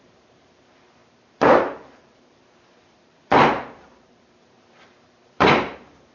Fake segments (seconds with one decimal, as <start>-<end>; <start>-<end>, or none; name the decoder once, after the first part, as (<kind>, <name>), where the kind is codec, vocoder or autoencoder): 0.0-6.1 (vocoder, BigVGAN v2)